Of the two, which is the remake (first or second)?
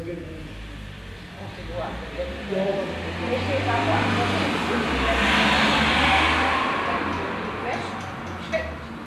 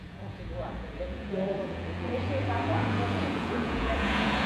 second